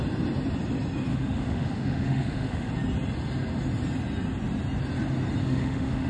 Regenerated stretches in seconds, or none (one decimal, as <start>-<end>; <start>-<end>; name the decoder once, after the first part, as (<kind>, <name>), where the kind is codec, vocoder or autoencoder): 1.1-2.7 (autoencoder, DAC-VAE); 5.4-6.1